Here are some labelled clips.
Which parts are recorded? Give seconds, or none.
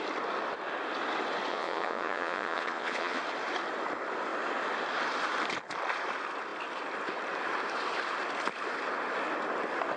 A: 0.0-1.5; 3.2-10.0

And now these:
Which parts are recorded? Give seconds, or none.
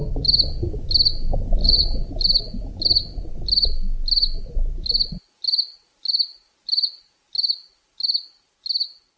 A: 0.0-1.6; 2.1-9.2